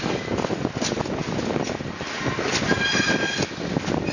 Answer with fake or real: real